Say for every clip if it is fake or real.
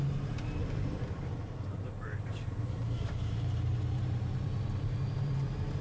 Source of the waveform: fake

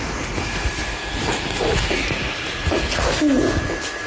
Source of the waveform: real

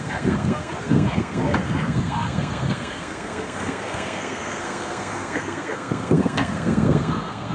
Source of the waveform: fake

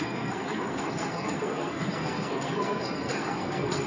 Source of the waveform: fake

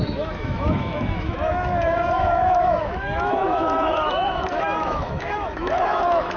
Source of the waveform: fake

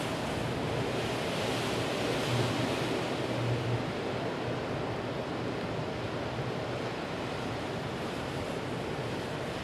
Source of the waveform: real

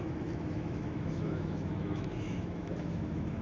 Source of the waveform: fake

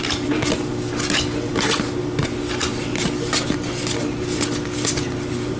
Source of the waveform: real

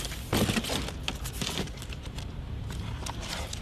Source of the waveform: fake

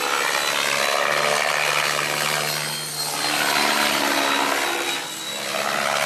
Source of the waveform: real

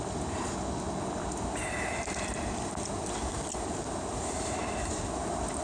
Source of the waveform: fake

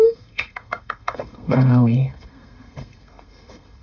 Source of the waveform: fake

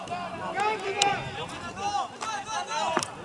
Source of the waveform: real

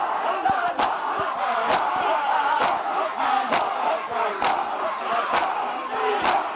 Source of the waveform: fake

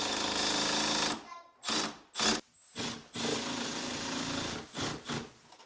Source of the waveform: real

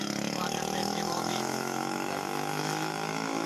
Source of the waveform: fake